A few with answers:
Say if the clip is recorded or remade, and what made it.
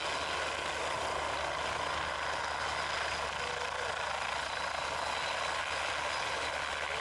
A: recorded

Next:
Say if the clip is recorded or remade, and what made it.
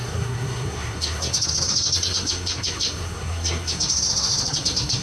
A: remade, codec, SNAC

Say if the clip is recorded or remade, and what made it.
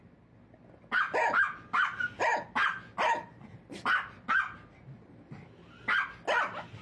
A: recorded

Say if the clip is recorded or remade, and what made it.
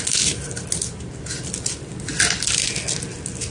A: recorded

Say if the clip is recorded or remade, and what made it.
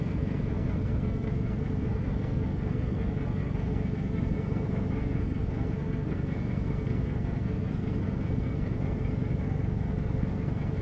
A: remade, codec, SNAC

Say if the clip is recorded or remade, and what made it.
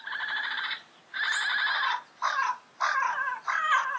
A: recorded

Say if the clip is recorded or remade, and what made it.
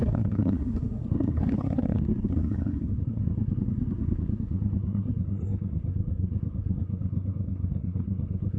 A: remade, codec, SNAC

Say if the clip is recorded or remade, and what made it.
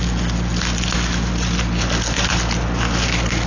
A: recorded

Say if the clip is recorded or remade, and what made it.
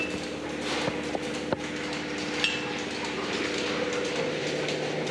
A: recorded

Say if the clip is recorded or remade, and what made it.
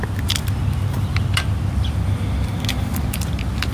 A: recorded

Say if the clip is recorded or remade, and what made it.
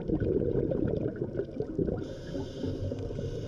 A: recorded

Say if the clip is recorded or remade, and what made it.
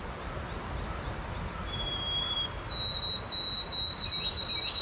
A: recorded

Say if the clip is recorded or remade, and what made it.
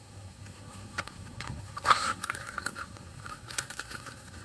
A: remade, codec, SNAC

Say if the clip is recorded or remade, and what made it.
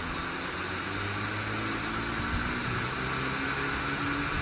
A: recorded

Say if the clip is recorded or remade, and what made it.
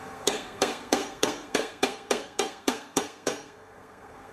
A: remade, codec, SNAC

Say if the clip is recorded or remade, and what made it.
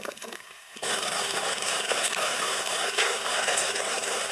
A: remade, codec, SNAC